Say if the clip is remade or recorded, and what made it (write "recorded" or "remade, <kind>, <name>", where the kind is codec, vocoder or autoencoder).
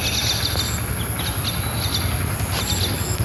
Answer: recorded